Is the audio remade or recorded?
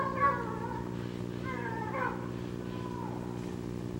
recorded